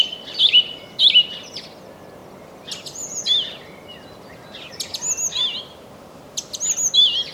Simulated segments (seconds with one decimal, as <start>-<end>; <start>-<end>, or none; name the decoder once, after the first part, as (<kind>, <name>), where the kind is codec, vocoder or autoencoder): none